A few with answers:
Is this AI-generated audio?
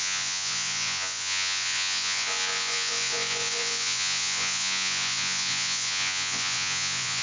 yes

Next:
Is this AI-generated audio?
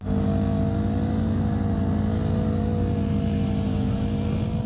no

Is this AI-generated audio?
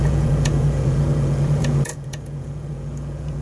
yes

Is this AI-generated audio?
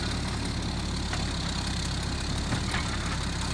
no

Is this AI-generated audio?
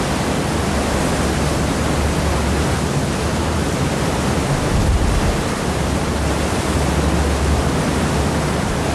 no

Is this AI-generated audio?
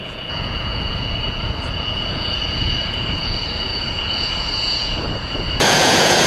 yes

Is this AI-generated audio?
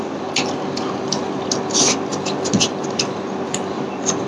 no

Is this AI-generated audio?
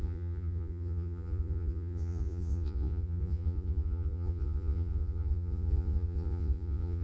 yes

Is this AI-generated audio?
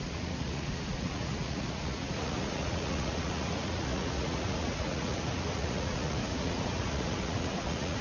yes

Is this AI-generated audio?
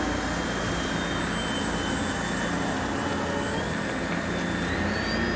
no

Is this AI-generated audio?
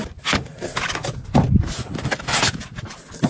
no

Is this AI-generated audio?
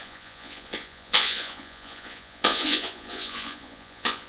yes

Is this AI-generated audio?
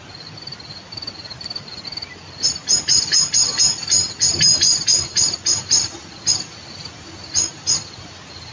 no